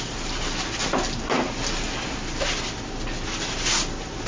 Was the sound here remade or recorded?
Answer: recorded